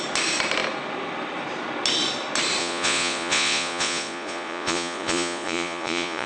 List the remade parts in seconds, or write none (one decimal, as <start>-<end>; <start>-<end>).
2.6-6.3